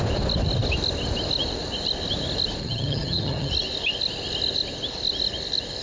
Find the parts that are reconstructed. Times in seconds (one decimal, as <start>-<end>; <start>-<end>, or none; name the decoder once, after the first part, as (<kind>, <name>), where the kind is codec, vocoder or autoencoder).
2.6-3.5 (vocoder, HiFi-GAN)